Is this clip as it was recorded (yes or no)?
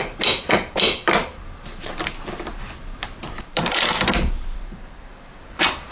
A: no